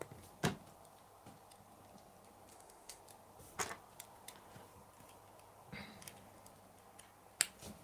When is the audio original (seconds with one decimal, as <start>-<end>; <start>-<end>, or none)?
0.0-2.5; 3.0-7.8